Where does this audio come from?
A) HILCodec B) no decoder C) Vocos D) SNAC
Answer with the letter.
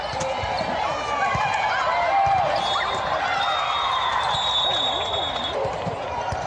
B